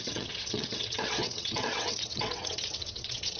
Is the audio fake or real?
fake